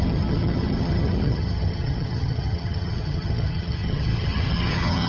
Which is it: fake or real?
fake